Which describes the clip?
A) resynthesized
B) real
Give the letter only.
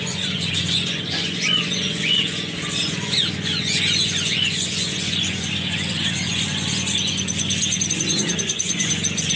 A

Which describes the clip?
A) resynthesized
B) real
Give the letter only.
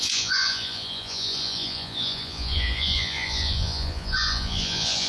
A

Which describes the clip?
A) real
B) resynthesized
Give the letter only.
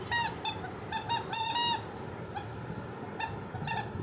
A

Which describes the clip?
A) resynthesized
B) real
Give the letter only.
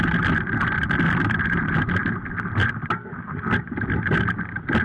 B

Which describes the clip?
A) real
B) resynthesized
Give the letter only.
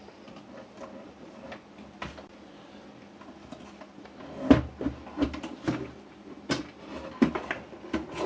A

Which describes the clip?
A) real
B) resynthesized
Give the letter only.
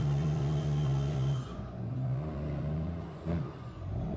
B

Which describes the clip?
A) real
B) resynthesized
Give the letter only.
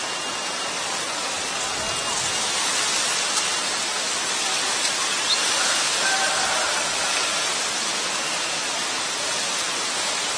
A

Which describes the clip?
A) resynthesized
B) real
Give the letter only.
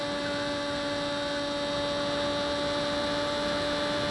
B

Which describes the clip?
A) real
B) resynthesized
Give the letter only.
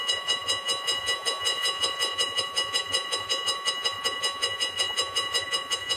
B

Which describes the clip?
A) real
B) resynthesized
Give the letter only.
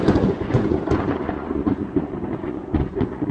B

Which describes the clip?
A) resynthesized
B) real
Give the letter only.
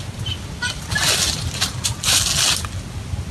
B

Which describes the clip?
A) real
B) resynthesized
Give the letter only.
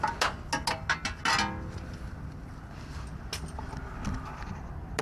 A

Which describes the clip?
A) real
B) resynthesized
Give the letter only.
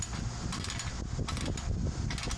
A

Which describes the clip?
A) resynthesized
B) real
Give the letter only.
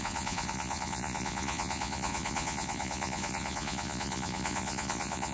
A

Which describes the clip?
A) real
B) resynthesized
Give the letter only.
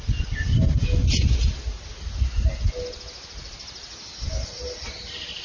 A